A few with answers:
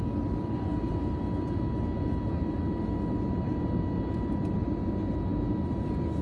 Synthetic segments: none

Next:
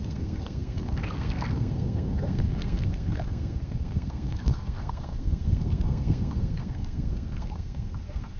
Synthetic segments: 0.0-8.4

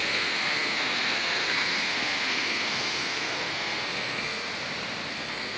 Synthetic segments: 0.0-4.5; 5.1-5.6

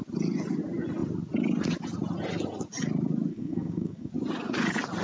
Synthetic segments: 3.3-4.1

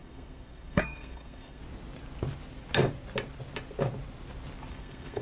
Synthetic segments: 0.0-1.6; 4.7-5.2

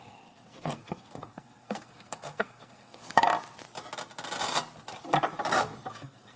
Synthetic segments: 0.0-3.3; 5.9-6.4

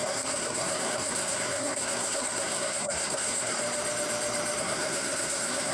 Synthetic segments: 0.0-3.6; 4.6-5.7

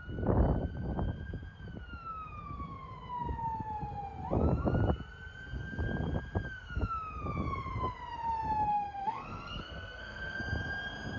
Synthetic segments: 8.7-10.4